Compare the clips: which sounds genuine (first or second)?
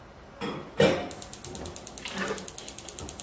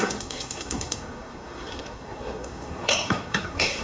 first